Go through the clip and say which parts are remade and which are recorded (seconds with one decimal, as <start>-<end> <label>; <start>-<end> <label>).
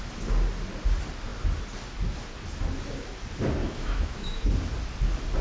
0.0-3.6 recorded; 3.6-4.5 remade; 4.5-5.4 recorded